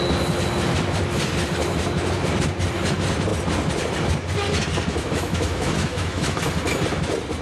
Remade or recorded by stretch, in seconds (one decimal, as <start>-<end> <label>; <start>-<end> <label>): 0.0-4.9 recorded; 4.9-6.4 remade; 6.4-7.4 recorded